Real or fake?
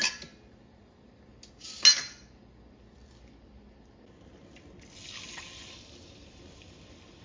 real